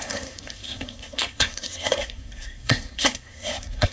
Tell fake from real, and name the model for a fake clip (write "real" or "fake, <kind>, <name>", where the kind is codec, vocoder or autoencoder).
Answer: fake, codec, SNAC